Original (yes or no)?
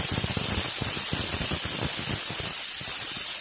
yes